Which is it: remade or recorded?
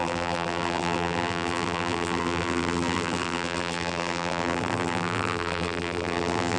remade